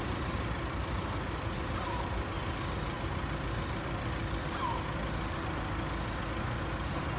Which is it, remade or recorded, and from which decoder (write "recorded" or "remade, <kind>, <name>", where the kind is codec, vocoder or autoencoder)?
recorded